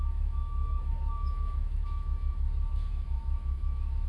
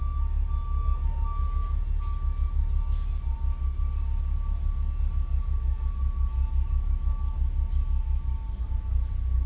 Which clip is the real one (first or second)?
second